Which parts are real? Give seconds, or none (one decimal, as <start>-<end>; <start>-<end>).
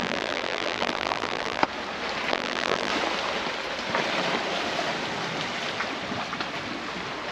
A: 1.6-2.3; 2.9-7.3